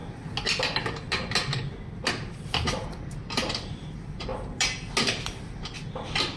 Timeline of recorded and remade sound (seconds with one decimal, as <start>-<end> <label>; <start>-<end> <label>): 0.0-2.1 recorded; 2.1-4.3 remade; 4.3-5.1 recorded; 5.1-6.4 remade